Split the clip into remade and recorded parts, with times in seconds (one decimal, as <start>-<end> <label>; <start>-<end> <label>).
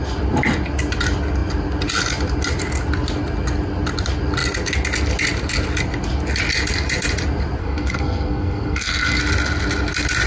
0.0-7.6 recorded; 7.6-9.2 remade; 9.2-10.3 recorded